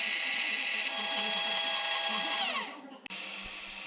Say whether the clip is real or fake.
real